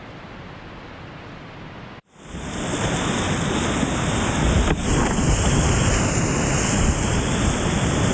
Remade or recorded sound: recorded